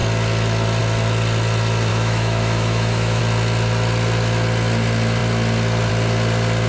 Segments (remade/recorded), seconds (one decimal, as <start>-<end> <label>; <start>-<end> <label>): 0.0-1.9 recorded; 1.9-3.2 remade; 3.2-6.7 recorded